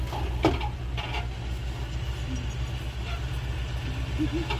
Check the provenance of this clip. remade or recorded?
recorded